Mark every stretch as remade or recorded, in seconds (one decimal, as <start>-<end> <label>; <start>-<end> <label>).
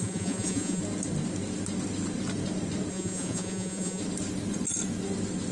0.0-0.8 remade; 0.8-2.9 recorded; 2.9-4.0 remade; 4.0-5.5 recorded